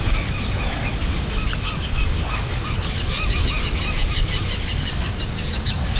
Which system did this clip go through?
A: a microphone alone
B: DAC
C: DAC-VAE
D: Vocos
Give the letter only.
B